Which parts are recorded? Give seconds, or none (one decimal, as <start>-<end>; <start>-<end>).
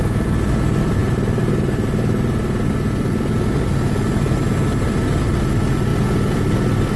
0.0-7.0